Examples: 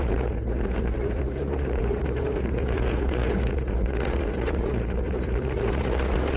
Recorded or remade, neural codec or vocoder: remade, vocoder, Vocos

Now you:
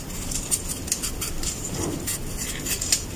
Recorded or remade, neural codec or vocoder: recorded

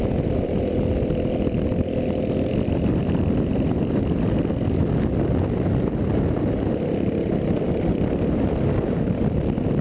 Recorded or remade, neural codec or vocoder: recorded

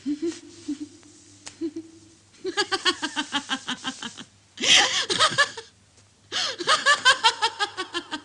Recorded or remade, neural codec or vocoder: recorded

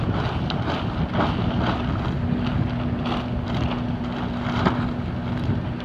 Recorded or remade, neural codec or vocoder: recorded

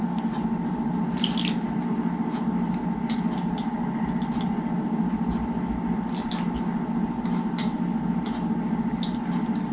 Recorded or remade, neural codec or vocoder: recorded